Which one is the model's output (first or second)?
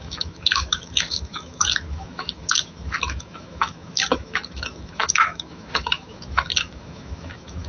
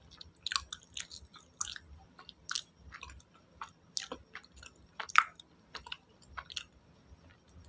first